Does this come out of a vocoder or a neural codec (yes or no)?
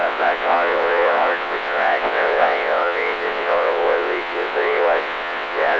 yes